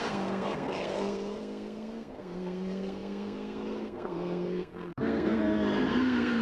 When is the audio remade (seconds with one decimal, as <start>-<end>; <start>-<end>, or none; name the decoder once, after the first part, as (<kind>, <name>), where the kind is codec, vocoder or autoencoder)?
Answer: 0.0-6.4 (codec, SNAC)